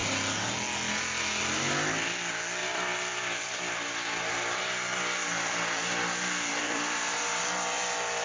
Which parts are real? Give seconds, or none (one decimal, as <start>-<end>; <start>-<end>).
0.0-2.6; 3.6-6.5; 7.4-8.2